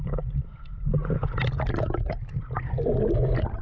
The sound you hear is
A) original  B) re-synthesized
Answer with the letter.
A